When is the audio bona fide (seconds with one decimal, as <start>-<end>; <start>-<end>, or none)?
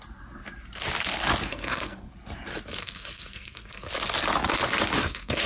0.0-1.5; 2.1-2.8; 3.9-5.0